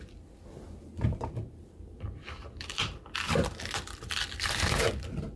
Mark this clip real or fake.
fake